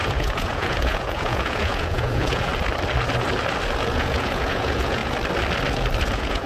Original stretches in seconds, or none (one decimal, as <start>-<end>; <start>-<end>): 2.5-3.9; 5.0-6.0

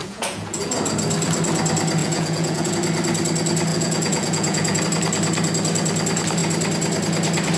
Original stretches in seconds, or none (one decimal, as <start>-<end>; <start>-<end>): 0.7-2.0; 2.7-3.7; 4.8-7.6

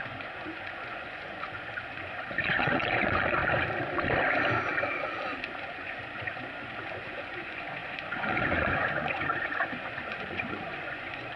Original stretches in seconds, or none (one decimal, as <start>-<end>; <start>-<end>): 3.4-5.5